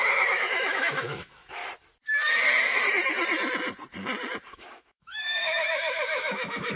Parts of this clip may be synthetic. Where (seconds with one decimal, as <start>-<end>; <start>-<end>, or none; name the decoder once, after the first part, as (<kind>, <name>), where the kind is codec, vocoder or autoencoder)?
0.0-1.6 (autoencoder, DAC-VAE); 4.5-6.8